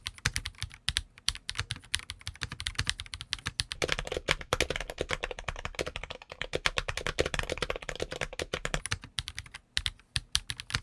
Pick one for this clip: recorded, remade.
recorded